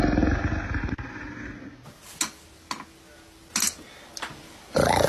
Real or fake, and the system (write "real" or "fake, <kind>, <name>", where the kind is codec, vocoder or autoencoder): real